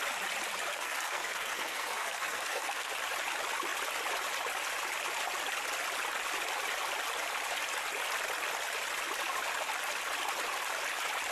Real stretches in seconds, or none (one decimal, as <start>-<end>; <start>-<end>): 0.0-0.7; 2.9-11.3